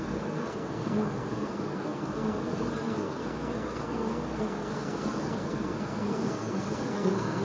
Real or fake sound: fake